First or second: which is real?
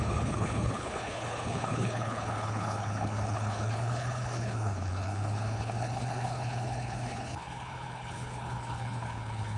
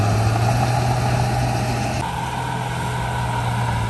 second